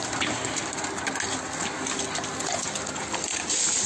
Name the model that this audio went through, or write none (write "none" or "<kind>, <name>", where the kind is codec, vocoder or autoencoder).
none